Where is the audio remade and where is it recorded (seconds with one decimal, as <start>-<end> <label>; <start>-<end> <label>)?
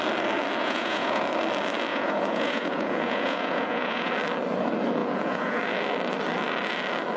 0.0-0.6 recorded; 0.6-1.2 remade; 1.2-1.9 recorded; 1.9-4.1 remade; 4.1-5.0 recorded; 5.0-5.6 remade; 5.6-7.2 recorded